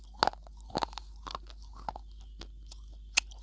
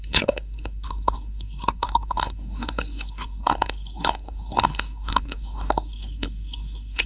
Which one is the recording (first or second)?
first